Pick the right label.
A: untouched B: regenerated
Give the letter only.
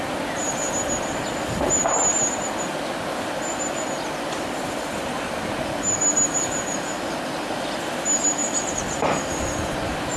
A